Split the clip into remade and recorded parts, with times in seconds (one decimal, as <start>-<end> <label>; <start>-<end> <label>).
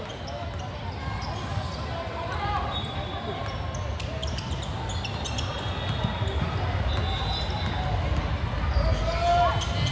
0.0-9.9 recorded